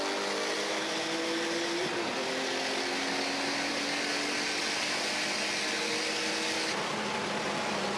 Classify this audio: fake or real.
real